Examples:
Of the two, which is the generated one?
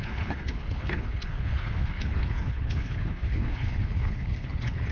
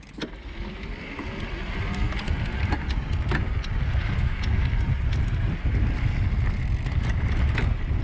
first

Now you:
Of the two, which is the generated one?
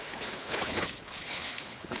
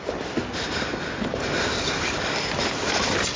first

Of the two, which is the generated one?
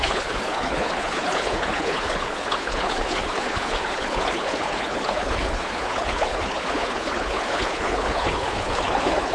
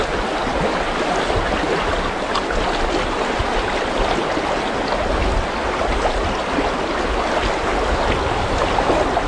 first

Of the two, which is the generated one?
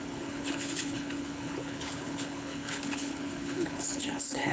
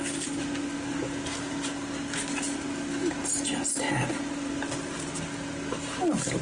first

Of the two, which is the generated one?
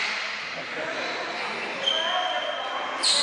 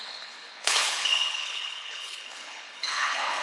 second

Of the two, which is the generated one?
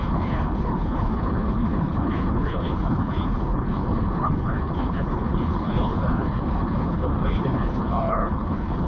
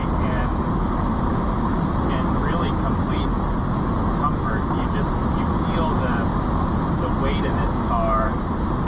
first